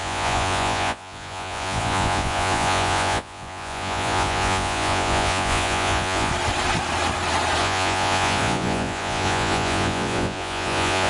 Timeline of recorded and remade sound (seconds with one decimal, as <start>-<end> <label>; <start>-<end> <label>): 0.0-6.3 remade; 6.3-7.6 recorded; 7.6-11.1 remade